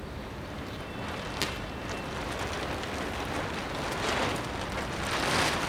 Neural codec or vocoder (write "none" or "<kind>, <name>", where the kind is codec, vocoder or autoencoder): none